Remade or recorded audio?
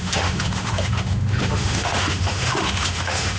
remade